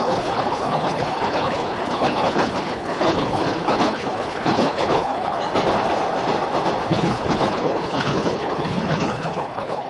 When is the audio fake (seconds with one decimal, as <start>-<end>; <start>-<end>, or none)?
0.0-5.4; 6.9-9.9